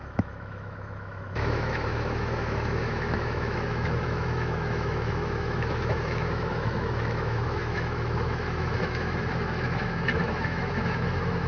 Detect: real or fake fake